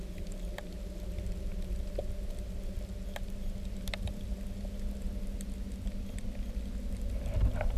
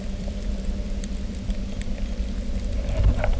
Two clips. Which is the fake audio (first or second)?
second